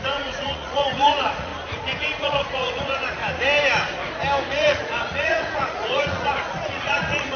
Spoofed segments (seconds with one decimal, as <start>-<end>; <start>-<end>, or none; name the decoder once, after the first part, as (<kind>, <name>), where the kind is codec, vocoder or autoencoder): 0.0-1.5 (vocoder, Vocos); 2.0-3.2; 4.5-7.4